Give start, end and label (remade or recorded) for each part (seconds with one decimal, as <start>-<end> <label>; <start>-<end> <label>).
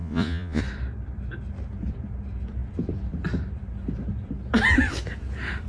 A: 0.0-0.6 remade; 0.6-5.7 recorded